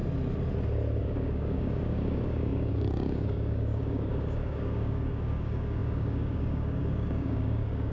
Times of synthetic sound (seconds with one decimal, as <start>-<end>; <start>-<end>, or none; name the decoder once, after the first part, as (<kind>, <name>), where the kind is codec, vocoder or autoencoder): 1.0-7.9 (codec, DAC)